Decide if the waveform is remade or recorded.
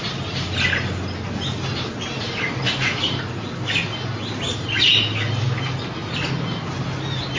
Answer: recorded